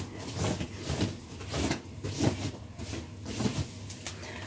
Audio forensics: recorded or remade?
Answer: recorded